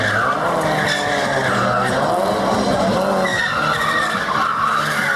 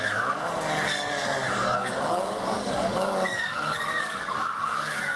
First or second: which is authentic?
first